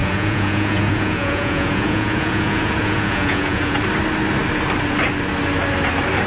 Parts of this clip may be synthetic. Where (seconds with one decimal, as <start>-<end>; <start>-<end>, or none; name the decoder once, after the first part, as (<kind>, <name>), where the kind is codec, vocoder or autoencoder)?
0.0-3.8 (vocoder, Vocos)